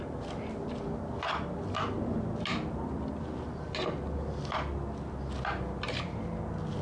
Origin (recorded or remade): recorded